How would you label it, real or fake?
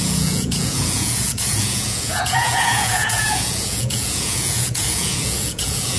fake